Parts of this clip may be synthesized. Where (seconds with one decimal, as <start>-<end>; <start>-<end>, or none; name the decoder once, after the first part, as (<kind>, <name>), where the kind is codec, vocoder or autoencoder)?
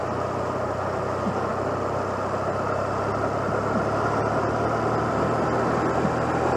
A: none